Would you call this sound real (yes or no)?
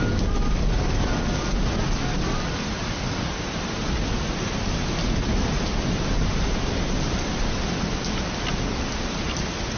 yes